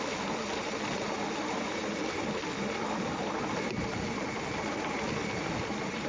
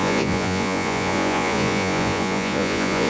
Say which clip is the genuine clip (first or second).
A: first